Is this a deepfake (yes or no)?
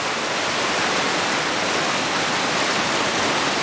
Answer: no